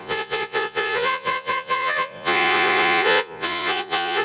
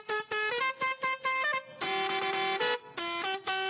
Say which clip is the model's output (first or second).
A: first